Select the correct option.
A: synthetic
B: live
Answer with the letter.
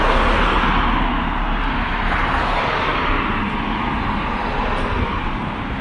B